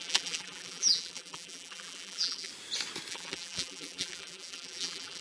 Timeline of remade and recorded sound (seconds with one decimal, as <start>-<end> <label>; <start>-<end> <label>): 0.0-2.5 remade; 2.5-3.1 recorded; 3.1-5.2 remade